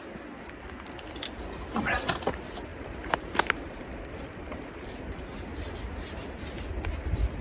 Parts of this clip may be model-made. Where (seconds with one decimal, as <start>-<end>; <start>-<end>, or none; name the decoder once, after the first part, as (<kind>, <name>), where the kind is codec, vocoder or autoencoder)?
2.7-5.2 (vocoder, BigVGAN v2)